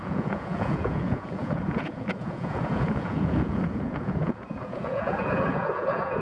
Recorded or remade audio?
remade